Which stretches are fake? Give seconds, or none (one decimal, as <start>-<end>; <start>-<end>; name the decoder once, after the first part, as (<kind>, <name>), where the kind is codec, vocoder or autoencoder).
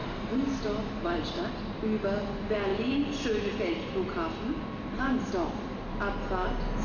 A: none